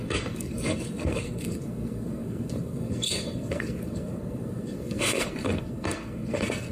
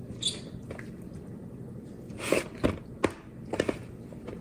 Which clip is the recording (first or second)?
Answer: second